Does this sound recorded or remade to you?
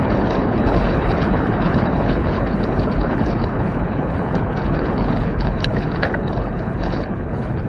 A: remade